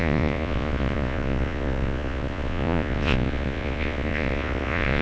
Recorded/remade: remade